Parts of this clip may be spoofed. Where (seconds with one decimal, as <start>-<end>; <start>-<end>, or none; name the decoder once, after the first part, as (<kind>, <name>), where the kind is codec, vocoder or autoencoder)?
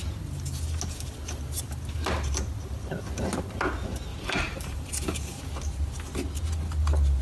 4.1-5.4 (vocoder, BigVGAN v2)